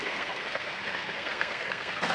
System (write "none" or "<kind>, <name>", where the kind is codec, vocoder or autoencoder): codec, SNAC